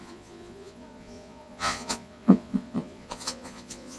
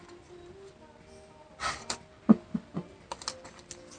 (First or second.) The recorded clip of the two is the second